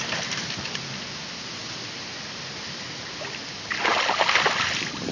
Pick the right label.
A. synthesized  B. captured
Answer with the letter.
B